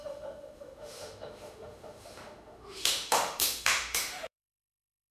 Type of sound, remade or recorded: remade